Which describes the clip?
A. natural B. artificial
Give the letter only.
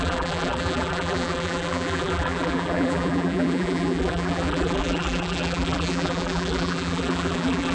B